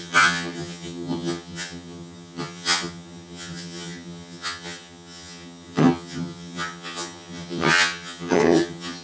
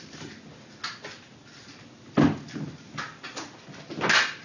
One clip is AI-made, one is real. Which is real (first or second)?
second